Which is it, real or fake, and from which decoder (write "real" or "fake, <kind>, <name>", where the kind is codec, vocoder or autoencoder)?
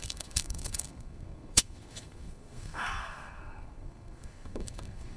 fake, codec, SNAC